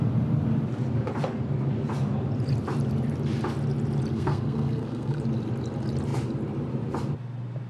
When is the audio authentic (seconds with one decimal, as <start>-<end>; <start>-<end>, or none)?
0.0-4.1; 5.2-7.7